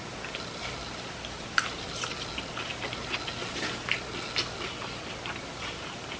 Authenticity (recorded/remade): recorded